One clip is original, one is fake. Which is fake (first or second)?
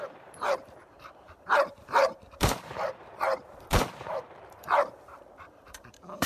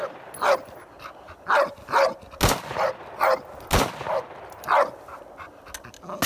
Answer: first